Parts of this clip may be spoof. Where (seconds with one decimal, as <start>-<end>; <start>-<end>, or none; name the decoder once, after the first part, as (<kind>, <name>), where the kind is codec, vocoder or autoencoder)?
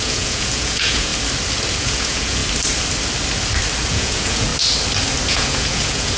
0.0-1.1 (vocoder, Vocos); 1.8-2.4; 3.9-4.5; 5.3-6.2